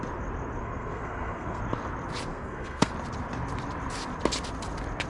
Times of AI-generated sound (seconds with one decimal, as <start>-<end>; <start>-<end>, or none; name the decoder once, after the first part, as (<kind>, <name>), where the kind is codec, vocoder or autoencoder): 0.6-1.6 (codec, SNAC); 2.3-2.9